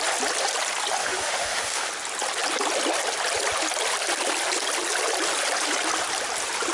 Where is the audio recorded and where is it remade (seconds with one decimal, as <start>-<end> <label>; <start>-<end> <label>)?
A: 0.0-1.0 recorded; 1.0-1.9 remade; 1.9-6.7 recorded